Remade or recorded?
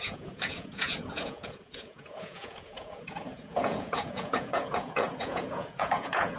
remade